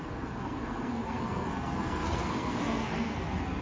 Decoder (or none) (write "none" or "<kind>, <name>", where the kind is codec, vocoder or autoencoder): codec, SNAC